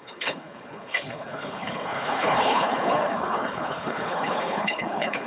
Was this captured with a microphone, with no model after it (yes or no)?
no